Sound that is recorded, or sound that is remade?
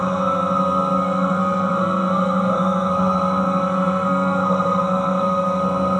remade